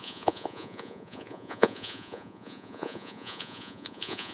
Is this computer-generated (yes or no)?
yes